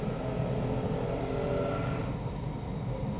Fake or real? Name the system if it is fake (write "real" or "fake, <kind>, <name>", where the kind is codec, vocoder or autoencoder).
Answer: real